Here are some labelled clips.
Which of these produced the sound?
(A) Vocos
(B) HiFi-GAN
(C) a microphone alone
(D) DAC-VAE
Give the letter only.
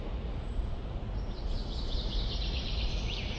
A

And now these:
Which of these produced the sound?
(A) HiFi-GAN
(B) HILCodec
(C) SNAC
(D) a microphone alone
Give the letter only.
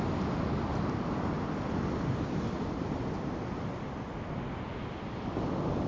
D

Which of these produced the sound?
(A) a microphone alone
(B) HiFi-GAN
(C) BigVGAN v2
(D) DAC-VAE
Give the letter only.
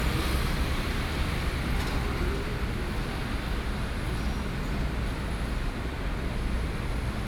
A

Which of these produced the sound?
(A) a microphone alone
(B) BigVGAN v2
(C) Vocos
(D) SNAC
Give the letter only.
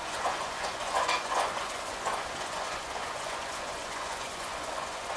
C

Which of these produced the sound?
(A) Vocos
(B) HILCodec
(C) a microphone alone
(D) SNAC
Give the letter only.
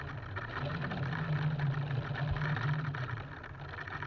C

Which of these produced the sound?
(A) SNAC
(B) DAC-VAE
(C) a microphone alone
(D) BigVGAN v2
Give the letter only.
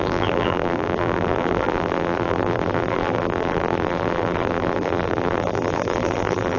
D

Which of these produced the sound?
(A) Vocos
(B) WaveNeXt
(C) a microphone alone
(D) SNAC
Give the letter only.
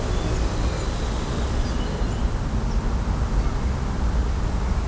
C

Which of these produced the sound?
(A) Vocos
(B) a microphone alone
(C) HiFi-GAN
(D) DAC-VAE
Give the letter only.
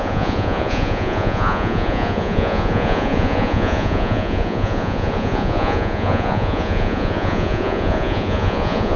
A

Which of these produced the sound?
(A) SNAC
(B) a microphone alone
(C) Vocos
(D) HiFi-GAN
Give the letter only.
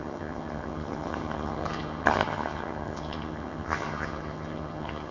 D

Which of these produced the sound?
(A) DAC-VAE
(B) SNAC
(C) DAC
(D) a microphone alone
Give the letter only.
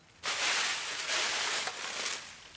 D